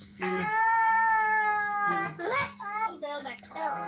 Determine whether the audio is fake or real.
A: fake